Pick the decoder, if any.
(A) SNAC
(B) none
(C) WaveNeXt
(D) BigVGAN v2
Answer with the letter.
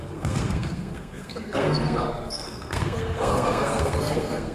A